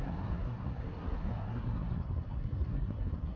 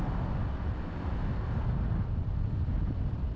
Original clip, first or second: second